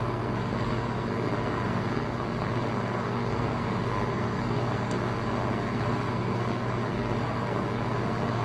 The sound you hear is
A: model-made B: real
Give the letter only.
A